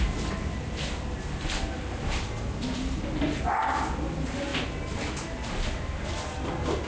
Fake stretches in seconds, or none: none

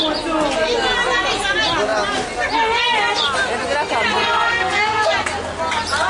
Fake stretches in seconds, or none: 4.2-5.1

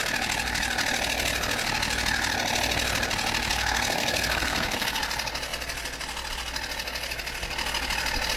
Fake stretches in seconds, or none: 3.5-5.0